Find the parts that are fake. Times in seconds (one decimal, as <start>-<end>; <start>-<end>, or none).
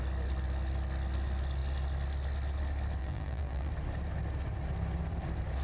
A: 3.0-3.7